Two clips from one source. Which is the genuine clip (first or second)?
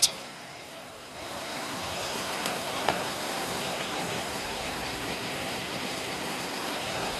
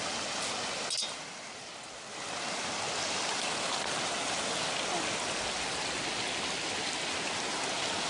second